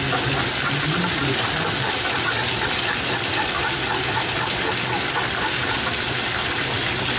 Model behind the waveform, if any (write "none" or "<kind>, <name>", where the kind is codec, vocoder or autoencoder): none